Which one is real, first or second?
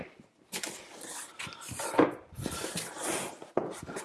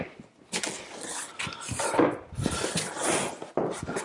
second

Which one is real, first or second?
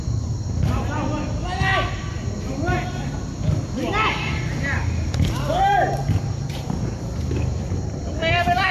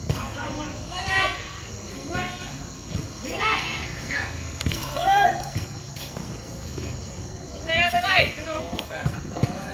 first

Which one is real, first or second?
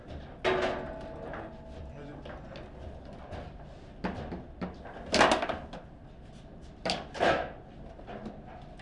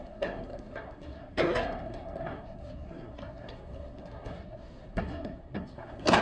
first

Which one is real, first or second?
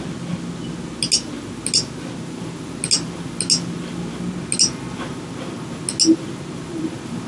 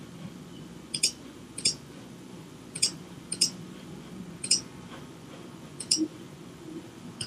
first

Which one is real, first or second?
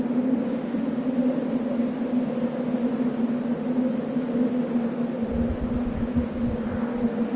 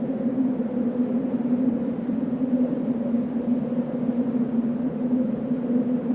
first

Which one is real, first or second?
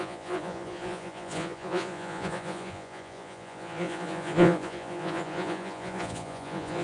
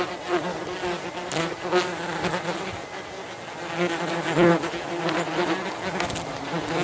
second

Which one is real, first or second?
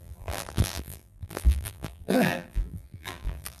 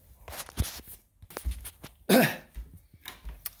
second